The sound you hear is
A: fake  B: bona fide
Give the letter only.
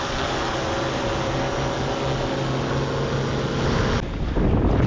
B